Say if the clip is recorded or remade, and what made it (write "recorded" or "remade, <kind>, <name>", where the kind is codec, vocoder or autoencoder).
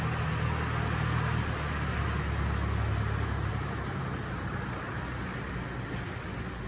recorded